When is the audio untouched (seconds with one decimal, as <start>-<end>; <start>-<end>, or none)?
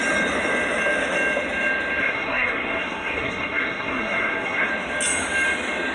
0.0-2.0; 4.7-5.9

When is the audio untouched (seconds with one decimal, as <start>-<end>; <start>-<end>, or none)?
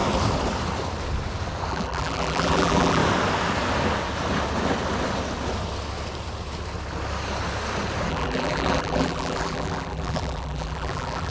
0.0-1.7; 3.0-8.1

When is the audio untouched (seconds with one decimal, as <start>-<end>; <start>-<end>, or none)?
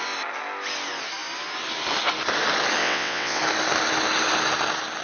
0.0-2.8; 3.4-5.0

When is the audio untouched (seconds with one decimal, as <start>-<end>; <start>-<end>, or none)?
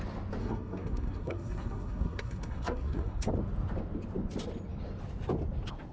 0.0-0.4; 3.3-5.9